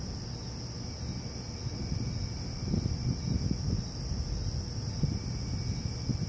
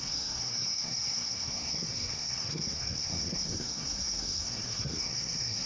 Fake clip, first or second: second